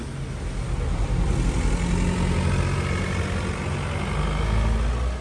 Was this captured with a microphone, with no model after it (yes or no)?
yes